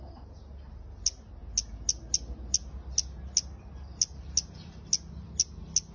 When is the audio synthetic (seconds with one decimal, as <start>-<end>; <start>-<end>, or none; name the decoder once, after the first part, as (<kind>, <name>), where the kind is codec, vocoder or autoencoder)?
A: none